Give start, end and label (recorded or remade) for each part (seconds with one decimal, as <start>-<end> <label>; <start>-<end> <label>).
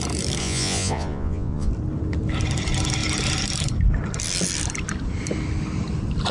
0.0-0.4 recorded; 0.4-1.7 remade; 1.7-6.3 recorded